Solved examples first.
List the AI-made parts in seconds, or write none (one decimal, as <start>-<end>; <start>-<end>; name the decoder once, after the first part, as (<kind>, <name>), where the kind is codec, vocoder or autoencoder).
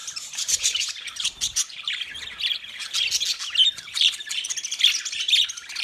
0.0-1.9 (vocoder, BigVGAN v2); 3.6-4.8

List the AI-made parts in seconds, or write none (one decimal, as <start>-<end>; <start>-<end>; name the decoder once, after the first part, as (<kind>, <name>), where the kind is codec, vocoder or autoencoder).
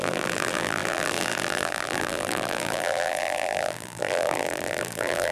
0.0-5.3 (vocoder, BigVGAN v2)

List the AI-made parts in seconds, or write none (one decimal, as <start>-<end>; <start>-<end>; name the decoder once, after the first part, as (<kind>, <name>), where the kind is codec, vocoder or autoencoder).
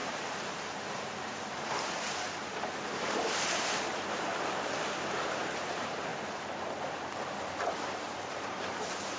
0.0-4.3 (vocoder, BigVGAN v2); 5.2-6.1; 7.5-9.2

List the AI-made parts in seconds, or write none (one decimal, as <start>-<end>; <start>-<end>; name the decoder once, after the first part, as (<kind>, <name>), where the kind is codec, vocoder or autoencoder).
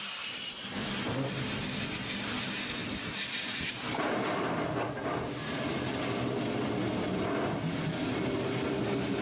2.8-3.7 (vocoder, BigVGAN v2); 5.0-8.4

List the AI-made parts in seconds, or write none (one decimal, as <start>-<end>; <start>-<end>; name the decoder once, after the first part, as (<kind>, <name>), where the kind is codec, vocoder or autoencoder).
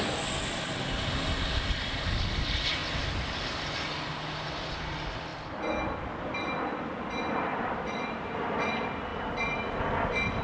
7.5-8.3 (vocoder, BigVGAN v2)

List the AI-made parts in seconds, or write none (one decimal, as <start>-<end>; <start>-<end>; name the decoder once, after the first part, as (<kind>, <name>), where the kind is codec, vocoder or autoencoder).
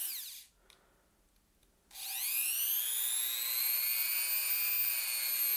none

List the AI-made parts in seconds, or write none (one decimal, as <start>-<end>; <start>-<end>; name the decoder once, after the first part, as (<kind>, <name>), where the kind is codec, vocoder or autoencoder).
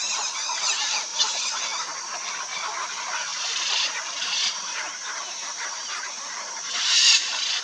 1.1-1.6 (vocoder, BigVGAN v2); 3.3-7.6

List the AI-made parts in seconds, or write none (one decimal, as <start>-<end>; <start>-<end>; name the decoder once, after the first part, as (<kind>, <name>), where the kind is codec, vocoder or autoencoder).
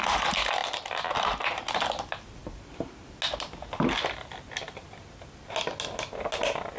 0.6-1.4 (vocoder, BigVGAN v2)